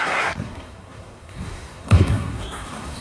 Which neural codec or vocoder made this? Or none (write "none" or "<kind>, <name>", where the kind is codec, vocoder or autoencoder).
codec, SNAC